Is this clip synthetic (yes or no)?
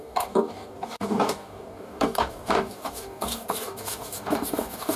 yes